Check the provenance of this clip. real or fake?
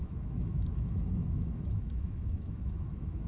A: fake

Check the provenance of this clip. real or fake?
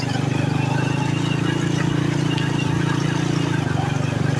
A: real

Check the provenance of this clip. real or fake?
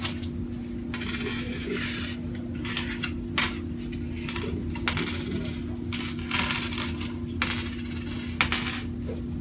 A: real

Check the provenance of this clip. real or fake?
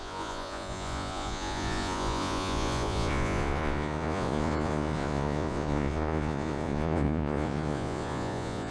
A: fake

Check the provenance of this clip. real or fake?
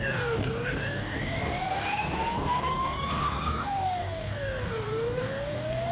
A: fake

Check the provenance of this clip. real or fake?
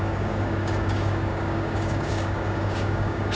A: fake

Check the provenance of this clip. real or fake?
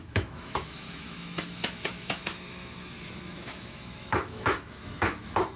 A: fake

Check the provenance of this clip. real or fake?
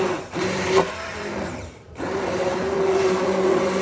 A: fake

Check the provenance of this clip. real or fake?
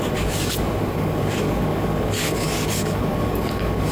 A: fake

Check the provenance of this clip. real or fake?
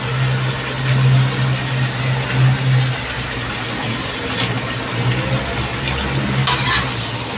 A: real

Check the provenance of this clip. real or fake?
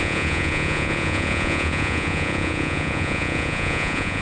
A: fake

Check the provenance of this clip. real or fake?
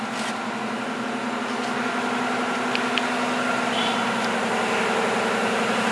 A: real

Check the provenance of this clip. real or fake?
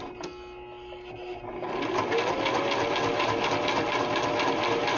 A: real